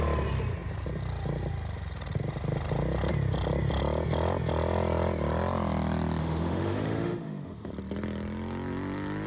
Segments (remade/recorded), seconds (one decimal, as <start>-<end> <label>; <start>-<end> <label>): 0.0-6.2 recorded; 6.2-7.7 remade; 7.7-9.3 recorded